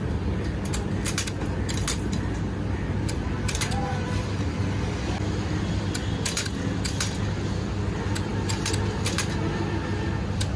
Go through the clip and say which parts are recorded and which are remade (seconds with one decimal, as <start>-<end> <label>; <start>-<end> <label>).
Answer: 0.0-10.6 recorded